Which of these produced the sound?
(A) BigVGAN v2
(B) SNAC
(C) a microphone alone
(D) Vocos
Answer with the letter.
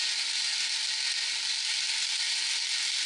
C